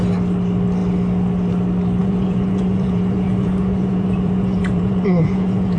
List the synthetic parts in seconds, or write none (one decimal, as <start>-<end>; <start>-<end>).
2.0-5.8